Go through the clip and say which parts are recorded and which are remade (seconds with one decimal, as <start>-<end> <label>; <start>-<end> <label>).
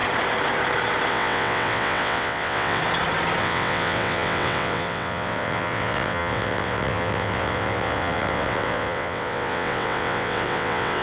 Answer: 0.0-1.1 recorded; 1.1-2.8 remade; 2.8-3.4 recorded; 3.4-11.0 remade